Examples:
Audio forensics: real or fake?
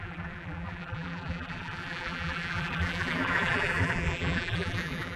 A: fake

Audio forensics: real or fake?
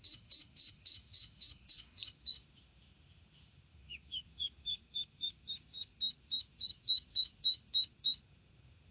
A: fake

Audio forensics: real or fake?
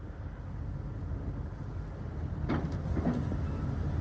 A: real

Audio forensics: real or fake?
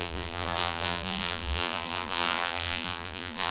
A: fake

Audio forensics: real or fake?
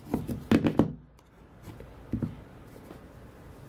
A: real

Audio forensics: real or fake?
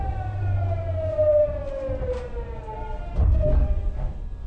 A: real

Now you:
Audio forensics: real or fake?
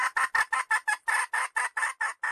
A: real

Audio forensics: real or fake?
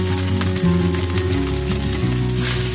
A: real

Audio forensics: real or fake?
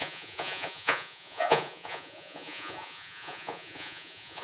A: fake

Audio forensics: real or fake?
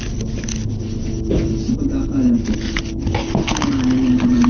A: real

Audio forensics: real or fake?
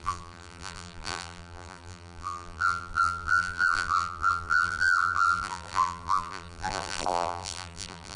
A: fake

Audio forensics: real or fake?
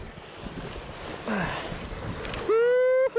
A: real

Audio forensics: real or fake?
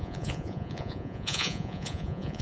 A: fake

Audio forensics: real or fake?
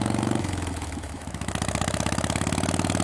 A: fake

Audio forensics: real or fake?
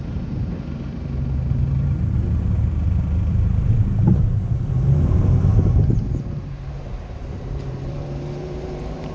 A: fake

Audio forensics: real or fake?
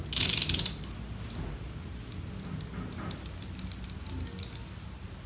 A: real